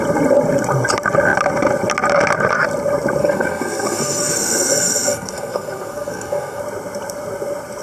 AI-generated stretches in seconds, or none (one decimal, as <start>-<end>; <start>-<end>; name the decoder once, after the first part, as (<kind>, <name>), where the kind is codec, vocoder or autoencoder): 3.2-6.6 (codec, SNAC)